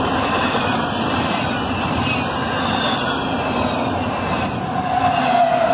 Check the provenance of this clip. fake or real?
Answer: real